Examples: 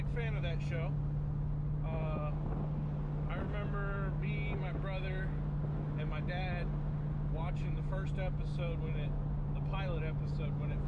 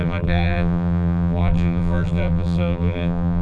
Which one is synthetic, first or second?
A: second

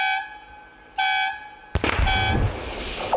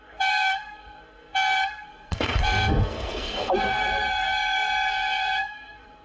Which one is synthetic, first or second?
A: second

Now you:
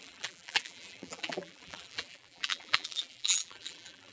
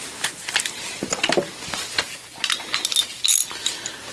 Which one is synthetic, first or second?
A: first